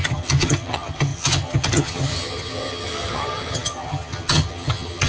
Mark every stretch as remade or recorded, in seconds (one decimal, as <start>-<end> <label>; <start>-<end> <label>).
0.0-5.1 remade